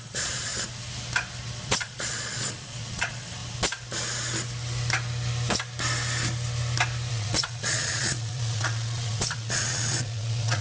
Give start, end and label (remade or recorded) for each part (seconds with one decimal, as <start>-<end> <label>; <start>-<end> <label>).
0.0-0.5 remade; 0.5-1.6 recorded; 1.6-3.4 remade; 3.4-7.1 recorded; 7.1-10.6 remade